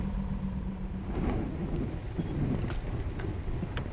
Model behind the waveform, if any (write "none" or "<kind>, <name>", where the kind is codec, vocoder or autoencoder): none